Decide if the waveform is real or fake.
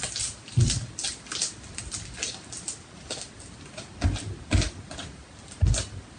real